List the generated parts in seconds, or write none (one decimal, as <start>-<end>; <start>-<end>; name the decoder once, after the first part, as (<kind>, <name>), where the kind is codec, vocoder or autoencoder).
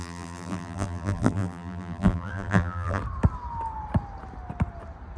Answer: 0.0-3.0 (vocoder, BigVGAN v2)